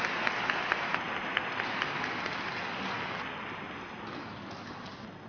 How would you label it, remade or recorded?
recorded